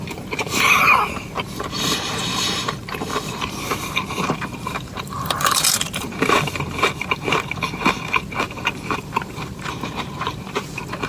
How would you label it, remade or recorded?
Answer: remade